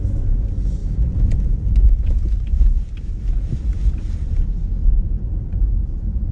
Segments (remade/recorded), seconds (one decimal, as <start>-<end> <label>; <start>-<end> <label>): 0.0-0.8 recorded; 0.8-3.1 remade; 3.1-3.7 recorded; 3.7-5.6 remade; 5.6-6.3 recorded